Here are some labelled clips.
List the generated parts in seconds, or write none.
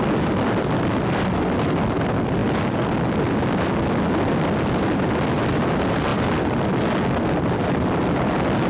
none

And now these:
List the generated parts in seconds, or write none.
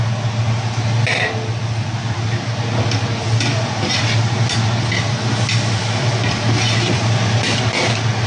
none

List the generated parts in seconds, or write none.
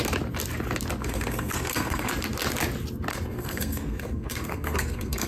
1.0-2.1; 3.1-5.3